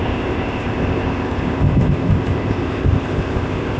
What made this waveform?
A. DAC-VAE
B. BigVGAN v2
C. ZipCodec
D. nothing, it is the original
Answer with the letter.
C